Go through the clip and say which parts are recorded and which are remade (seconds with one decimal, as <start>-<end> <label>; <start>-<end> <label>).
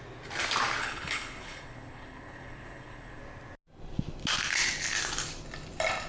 0.0-0.8 recorded; 0.8-3.2 remade; 3.2-6.1 recorded